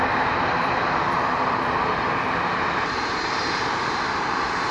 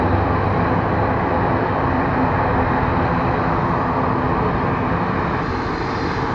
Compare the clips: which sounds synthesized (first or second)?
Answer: first